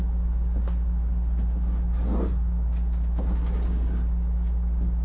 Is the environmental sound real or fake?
real